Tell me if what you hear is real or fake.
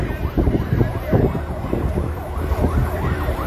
fake